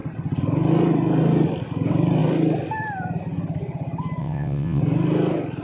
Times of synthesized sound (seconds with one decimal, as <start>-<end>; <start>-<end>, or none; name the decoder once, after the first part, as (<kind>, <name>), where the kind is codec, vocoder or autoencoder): 4.2-4.8 (vocoder, WaveNeXt)